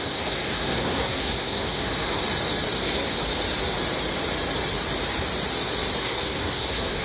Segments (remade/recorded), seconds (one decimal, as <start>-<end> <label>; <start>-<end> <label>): 0.0-2.2 remade; 2.2-2.8 recorded; 2.8-3.2 remade; 3.2-6.0 recorded; 6.0-7.0 remade